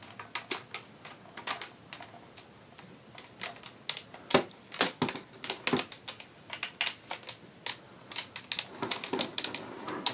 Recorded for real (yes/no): yes